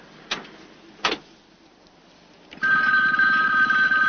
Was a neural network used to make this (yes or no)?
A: no